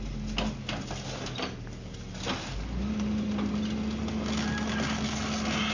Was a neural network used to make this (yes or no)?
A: no